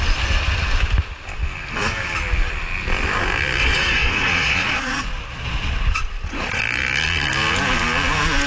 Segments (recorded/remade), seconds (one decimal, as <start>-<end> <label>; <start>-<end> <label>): 0.0-3.6 recorded; 3.6-6.6 remade; 6.6-8.5 recorded